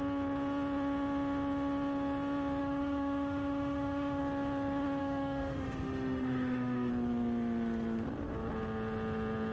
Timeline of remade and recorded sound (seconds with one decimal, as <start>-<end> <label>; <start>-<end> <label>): 0.0-2.6 recorded; 2.6-4.2 remade; 4.2-5.0 recorded; 5.0-6.9 remade; 6.9-9.5 recorded